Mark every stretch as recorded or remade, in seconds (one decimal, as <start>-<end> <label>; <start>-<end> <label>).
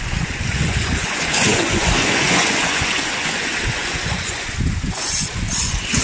0.0-6.0 remade